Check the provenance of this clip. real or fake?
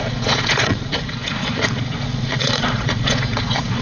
fake